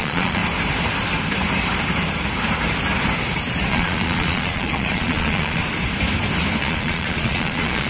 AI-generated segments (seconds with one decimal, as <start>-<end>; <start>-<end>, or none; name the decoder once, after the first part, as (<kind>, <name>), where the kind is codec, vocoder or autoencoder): 0.0-0.4 (vocoder, Vocos); 3.7-5.6; 6.6-7.9